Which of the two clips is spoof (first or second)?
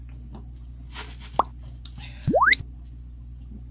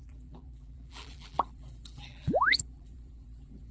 second